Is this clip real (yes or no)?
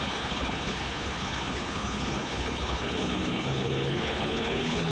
no